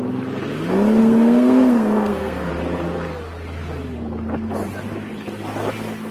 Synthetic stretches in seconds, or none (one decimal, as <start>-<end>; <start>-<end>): 1.0-2.5